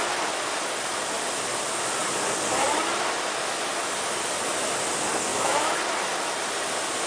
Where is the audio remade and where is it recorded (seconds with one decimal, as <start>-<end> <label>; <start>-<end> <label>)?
0.0-5.3 recorded; 5.3-5.8 remade; 5.8-7.1 recorded